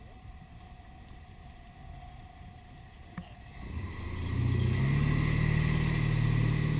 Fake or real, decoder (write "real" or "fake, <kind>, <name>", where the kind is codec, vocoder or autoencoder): real